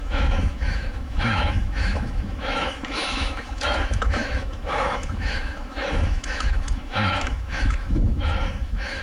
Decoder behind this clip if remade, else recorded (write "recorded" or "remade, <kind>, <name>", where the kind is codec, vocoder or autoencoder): remade, autoencoder, DAC-VAE